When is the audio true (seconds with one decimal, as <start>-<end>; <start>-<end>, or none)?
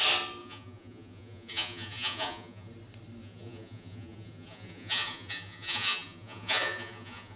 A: 0.0-0.4; 2.7-3.2